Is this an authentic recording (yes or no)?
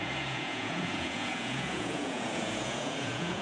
no